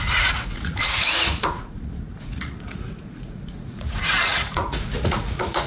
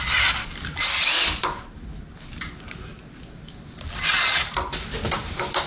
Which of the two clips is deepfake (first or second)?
first